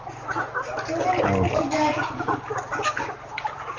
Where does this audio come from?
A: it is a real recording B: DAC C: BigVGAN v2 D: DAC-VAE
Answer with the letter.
A